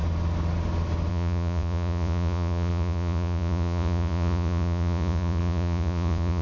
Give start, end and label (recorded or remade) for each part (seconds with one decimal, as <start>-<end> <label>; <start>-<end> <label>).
0.0-1.1 recorded; 1.1-6.4 remade